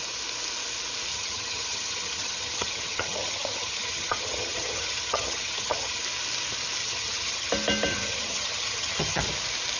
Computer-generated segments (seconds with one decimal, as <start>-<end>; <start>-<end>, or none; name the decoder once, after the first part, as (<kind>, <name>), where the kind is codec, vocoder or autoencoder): 1.1-6.0 (vocoder, HiFi-GAN); 6.8-7.5; 7.9-9.2